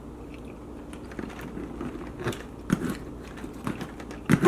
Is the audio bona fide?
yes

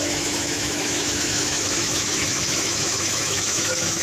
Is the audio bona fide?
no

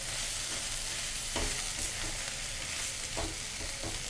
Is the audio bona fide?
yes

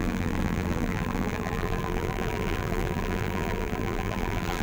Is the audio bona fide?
no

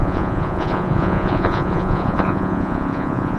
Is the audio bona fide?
no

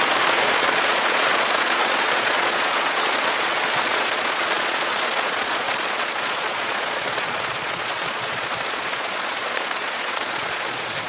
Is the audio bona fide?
no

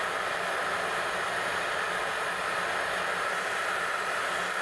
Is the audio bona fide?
yes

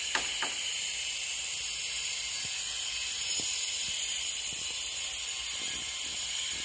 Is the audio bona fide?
yes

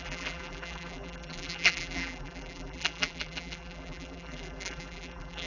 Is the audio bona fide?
no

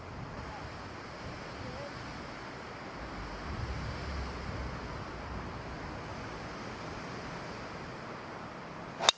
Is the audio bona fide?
yes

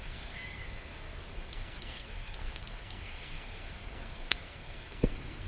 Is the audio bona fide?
no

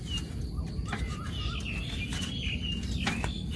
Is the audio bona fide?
yes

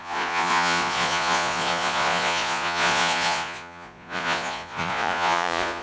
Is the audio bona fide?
no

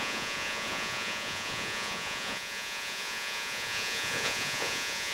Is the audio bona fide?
no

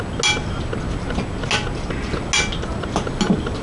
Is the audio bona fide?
yes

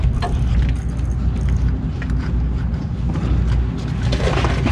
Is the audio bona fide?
yes